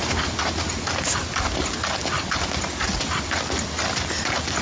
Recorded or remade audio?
recorded